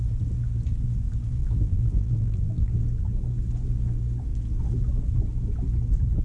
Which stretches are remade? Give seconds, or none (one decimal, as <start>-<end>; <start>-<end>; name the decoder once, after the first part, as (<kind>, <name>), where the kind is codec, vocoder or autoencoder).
1.4-2.7 (vocoder, BigVGAN v2)